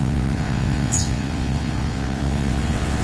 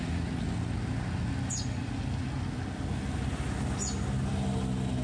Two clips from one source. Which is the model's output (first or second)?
first